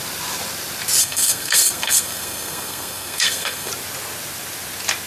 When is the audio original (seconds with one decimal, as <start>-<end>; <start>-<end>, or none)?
0.0-1.0; 3.7-5.1